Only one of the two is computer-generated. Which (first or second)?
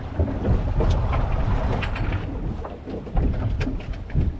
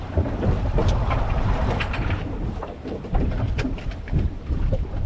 second